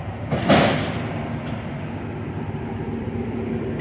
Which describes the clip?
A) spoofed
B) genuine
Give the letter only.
A